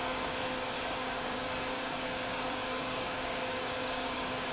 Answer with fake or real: fake